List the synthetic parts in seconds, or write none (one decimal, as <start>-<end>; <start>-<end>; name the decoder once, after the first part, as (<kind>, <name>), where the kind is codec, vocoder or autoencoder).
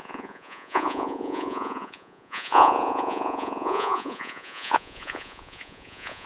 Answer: 0.0-6.3 (vocoder, Vocos)